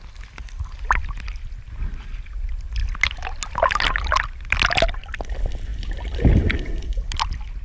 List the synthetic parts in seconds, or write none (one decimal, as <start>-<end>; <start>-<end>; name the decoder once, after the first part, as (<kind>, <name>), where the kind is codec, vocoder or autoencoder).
5.7-6.2 (vocoder, BigVGAN v2)